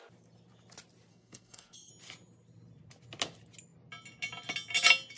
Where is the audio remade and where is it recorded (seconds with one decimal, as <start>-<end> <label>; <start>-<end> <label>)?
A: 0.0-1.1 recorded; 1.1-1.9 remade; 1.9-5.2 recorded